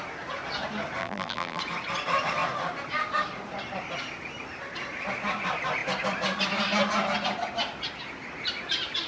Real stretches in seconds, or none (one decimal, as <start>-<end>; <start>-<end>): 0.0-1.0; 1.6-9.1